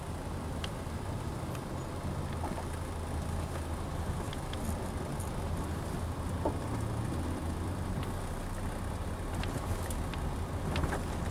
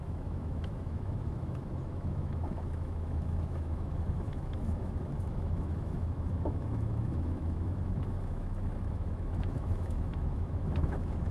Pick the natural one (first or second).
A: first